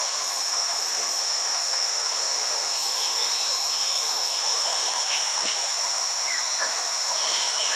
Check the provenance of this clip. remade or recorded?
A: remade